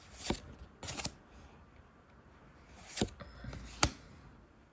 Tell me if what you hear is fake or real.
real